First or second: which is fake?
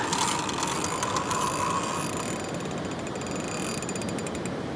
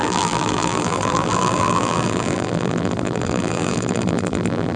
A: second